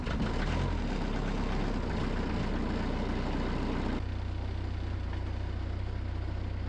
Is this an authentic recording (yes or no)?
yes